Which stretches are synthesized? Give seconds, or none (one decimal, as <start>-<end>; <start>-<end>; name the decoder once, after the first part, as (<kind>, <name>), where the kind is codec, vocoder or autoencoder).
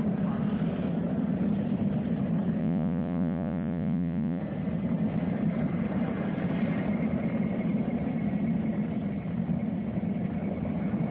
2.6-4.4 (vocoder, Vocos)